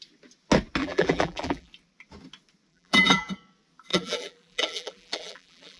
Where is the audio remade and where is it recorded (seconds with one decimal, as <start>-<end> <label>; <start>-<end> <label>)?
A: 0.0-0.8 recorded; 0.8-1.7 remade; 1.7-2.7 recorded; 2.7-3.3 remade; 3.3-3.9 recorded; 3.9-5.8 remade